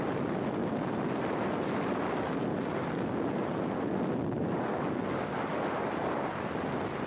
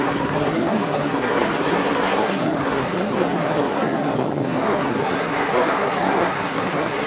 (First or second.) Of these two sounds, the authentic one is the first